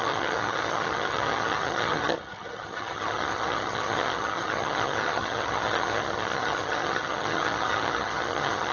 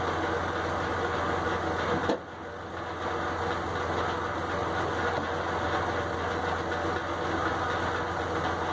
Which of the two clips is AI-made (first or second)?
first